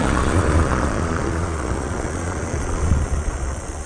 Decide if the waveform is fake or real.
fake